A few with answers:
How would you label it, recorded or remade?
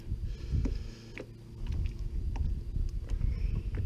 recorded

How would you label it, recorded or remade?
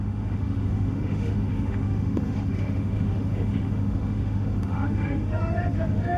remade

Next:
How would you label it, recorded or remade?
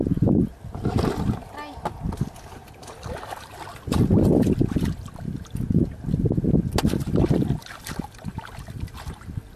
recorded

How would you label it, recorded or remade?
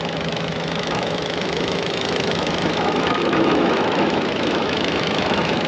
remade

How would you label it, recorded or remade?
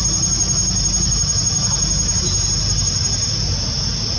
recorded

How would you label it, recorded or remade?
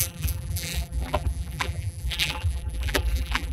remade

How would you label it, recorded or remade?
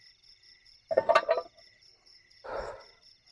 recorded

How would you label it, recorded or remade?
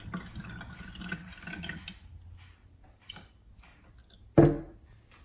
recorded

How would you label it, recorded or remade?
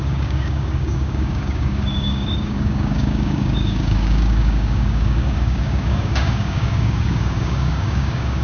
remade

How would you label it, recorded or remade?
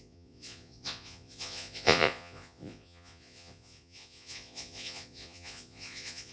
remade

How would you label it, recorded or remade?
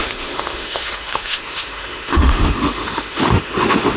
remade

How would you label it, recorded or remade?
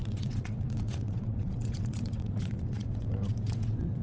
remade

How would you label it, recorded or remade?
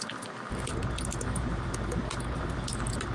recorded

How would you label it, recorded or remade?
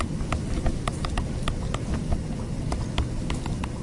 remade